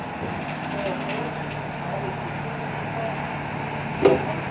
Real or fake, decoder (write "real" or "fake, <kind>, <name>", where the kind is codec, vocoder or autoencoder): real